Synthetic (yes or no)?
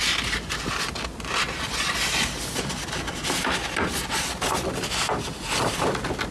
no